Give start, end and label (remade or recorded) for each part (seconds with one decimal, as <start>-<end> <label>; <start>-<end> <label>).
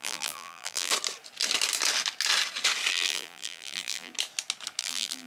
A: 0.0-0.9 remade; 0.9-2.9 recorded; 2.9-4.1 remade; 4.1-4.8 recorded; 4.8-5.3 remade